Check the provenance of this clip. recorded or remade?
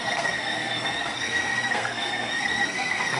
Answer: remade